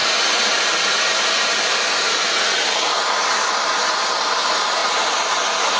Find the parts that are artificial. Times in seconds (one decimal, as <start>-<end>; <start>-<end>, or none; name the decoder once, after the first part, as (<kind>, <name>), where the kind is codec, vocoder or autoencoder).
0.0-3.5 (vocoder, BigVGAN v2)

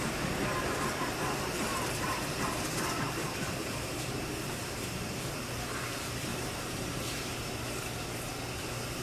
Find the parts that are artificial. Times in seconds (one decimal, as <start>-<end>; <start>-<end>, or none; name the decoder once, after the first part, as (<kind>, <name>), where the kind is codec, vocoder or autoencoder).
1.7-2.4 (vocoder, BigVGAN v2); 3.2-4.8; 6.3-7.5

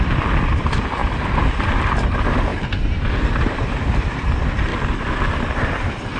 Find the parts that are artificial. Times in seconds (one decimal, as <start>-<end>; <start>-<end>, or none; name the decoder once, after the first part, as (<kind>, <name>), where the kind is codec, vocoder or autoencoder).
1.0-1.8 (vocoder, BigVGAN v2)

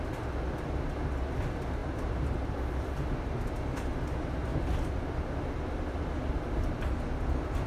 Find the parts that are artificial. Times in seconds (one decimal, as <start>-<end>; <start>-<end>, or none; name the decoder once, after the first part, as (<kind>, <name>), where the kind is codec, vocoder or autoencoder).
1.8-2.7 (vocoder, BigVGAN v2)

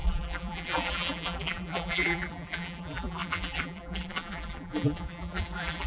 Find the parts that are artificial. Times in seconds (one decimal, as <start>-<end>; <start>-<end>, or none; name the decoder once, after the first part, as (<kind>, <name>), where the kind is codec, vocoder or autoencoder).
0.0-5.9 (vocoder, BigVGAN v2)

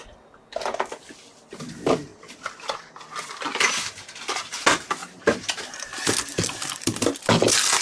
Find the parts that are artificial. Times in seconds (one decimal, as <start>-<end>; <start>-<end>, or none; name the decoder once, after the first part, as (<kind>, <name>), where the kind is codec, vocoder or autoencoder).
none